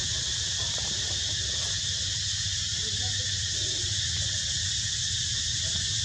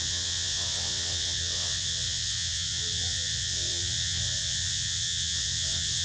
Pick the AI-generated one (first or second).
second